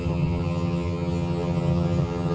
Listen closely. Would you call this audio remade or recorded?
remade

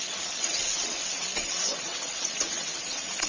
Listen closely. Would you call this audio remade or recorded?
remade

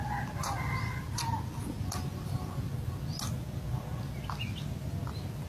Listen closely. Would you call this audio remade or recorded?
recorded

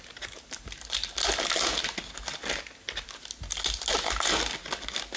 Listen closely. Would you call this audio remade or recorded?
recorded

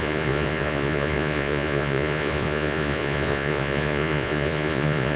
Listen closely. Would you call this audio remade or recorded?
remade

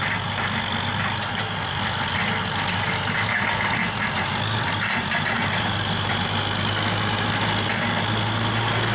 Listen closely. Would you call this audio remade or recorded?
recorded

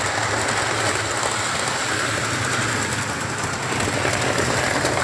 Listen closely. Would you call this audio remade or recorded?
recorded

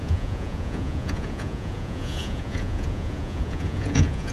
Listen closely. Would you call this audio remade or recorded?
remade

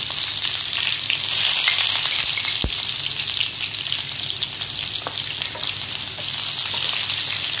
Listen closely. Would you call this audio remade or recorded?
recorded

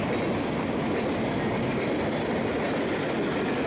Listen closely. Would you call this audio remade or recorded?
recorded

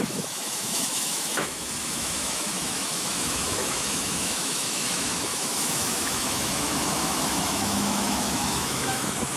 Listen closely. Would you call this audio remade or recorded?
remade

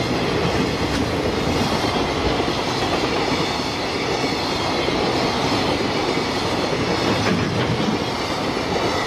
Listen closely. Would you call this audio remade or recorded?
recorded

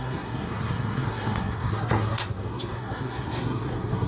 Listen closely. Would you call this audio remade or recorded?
remade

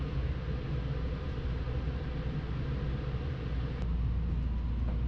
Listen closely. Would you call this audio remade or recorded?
recorded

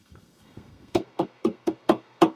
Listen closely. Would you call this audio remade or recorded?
remade